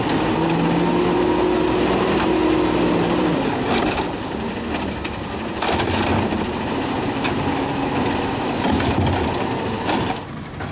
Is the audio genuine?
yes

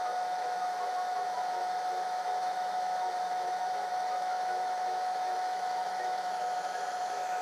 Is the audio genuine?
no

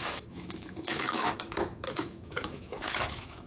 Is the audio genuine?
no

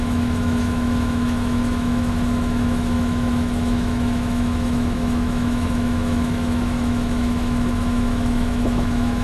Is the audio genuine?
no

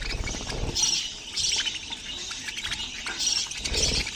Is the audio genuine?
yes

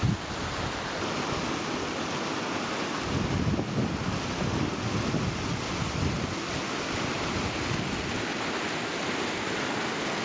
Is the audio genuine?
yes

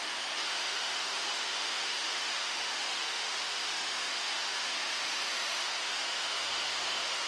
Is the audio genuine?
no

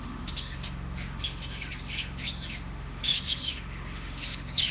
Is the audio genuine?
no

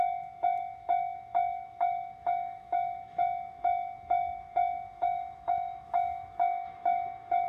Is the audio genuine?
no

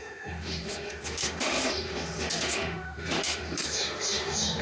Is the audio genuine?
no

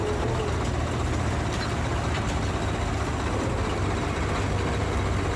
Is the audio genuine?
yes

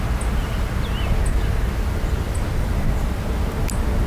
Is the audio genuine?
yes